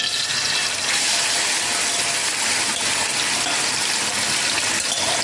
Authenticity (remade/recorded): recorded